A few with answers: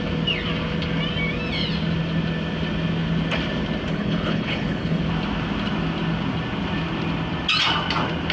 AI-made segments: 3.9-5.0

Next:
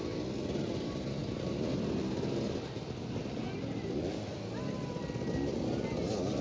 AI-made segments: none

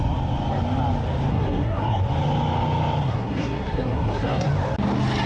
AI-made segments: 1.3-2.0; 3.0-4.5

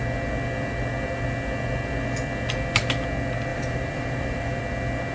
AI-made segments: 3.5-4.6

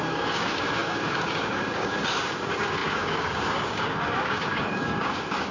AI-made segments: 0.0-5.5

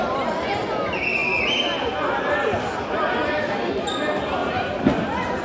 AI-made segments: none

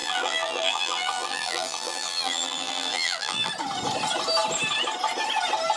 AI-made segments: 0.0-3.5

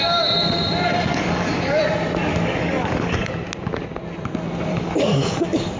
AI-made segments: 1.1-1.8; 2.3-3.3; 4.7-5.8